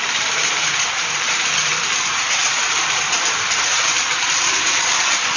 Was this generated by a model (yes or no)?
yes